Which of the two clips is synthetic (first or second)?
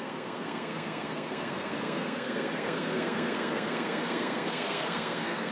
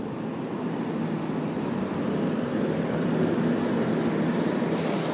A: first